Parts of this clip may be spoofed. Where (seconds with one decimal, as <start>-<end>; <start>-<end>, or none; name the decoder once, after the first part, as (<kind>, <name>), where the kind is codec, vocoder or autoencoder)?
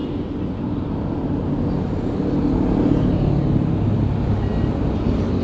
none